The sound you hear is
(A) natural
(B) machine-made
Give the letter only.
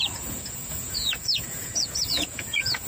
B